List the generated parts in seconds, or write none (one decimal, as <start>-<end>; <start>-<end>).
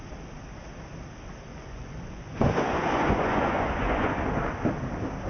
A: 1.5-4.2